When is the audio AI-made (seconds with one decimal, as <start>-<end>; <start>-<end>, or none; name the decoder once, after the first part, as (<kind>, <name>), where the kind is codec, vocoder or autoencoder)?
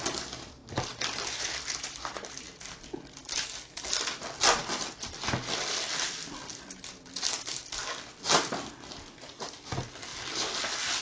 none